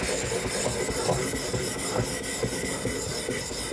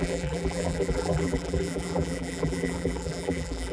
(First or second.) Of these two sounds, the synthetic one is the second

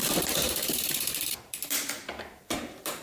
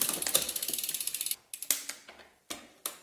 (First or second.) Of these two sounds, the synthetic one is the first